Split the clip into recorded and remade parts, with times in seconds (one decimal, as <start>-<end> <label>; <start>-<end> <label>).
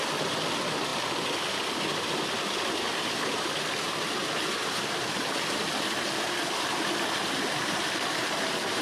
0.0-8.8 recorded